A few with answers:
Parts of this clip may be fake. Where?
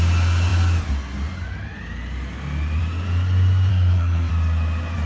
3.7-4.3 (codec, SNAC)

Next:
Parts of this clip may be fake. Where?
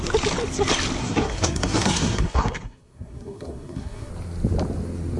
1.0-4.1 (codec, SNAC)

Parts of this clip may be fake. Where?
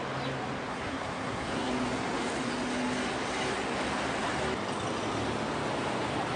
0.7-1.7 (codec, SNAC)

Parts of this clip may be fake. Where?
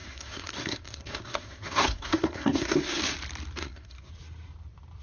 0.0-3.0 (codec, SNAC); 3.6-4.1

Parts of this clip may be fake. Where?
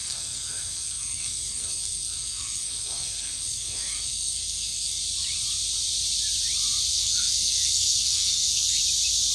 0.0-5.0 (codec, SNAC); 6.9-8.8